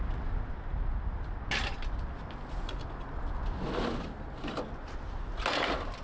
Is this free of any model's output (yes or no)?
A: yes